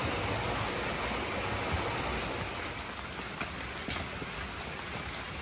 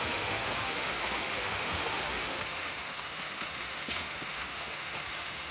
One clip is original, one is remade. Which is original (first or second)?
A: first